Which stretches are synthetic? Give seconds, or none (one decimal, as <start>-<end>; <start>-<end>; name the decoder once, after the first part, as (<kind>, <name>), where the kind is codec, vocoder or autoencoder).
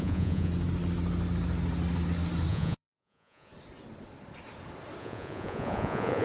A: 0.0-0.5 (vocoder, Vocos); 2.5-3.5; 5.0-6.2